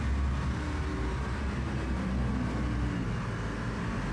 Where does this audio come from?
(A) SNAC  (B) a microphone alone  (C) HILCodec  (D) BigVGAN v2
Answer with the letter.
B